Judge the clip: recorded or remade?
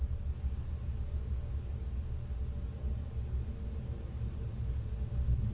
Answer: recorded